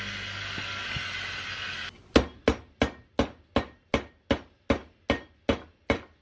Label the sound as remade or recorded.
recorded